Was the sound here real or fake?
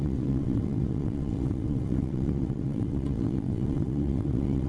fake